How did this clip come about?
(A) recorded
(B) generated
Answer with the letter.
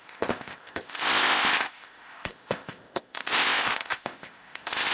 B